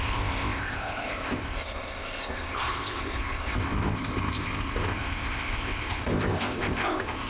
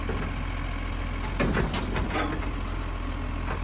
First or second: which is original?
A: second